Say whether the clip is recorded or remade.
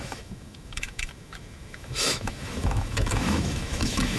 remade